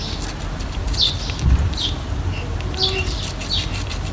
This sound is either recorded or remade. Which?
recorded